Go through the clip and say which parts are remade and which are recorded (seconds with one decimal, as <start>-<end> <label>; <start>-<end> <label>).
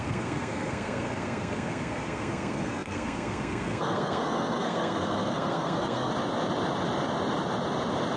0.0-6.1 remade; 6.1-8.2 recorded